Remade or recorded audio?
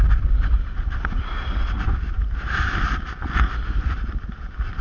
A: remade